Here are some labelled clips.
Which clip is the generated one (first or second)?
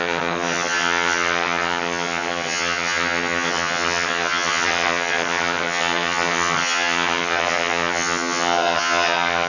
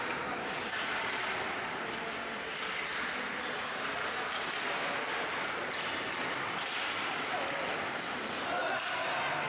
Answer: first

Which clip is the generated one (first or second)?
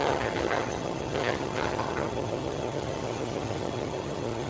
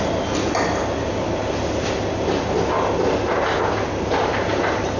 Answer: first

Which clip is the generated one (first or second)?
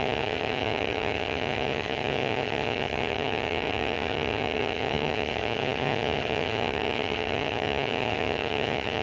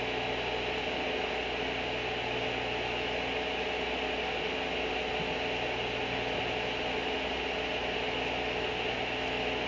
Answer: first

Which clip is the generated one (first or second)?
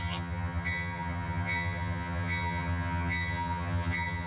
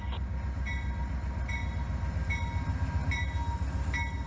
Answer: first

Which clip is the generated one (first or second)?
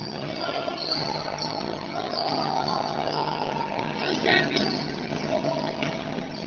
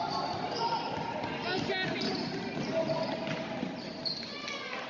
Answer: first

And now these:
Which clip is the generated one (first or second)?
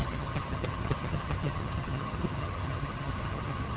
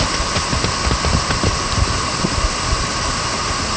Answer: first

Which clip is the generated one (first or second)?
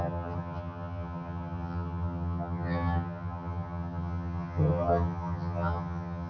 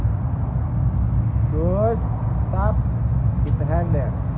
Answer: first